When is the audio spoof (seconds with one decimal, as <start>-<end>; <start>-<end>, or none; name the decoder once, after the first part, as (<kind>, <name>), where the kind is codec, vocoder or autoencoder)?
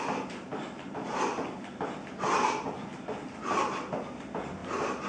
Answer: 0.0-0.5 (vocoder, BigVGAN v2); 3.6-4.6